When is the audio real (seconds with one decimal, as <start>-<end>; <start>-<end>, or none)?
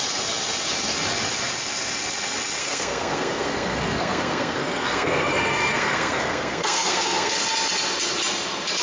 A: 0.0-2.6; 7.4-8.8